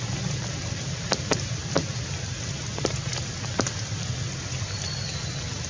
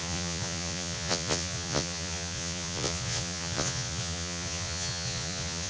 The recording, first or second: first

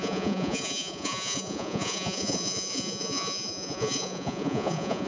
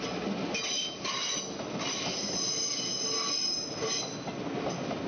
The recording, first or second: second